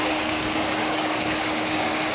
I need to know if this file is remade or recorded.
remade